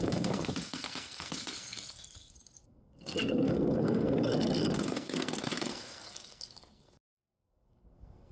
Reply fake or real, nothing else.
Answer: fake